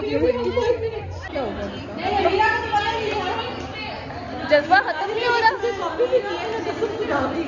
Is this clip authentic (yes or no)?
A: yes